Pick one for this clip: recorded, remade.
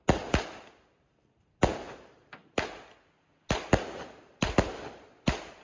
recorded